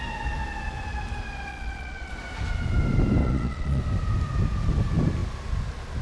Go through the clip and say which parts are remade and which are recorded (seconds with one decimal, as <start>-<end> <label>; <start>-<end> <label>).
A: 0.0-1.5 recorded; 1.5-2.1 remade; 2.1-3.2 recorded; 3.2-3.8 remade; 3.8-6.0 recorded